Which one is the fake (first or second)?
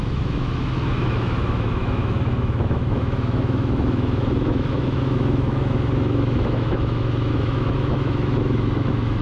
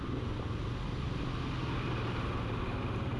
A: first